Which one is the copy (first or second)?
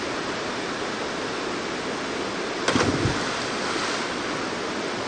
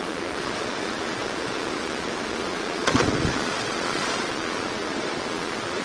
second